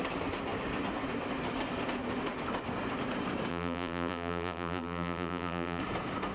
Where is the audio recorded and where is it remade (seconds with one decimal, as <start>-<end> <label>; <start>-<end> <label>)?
0.0-3.5 recorded; 3.5-5.8 remade; 5.8-6.3 recorded